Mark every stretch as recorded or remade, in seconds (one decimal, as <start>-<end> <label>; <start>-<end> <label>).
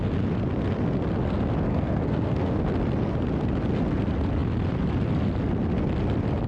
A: 0.0-1.7 recorded; 1.7-2.7 remade; 2.7-6.5 recorded